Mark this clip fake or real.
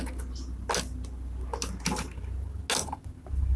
real